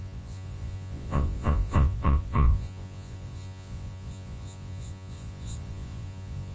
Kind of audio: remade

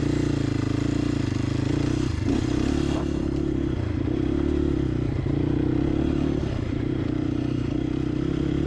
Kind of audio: recorded